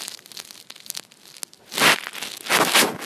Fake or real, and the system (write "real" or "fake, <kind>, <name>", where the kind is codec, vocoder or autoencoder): real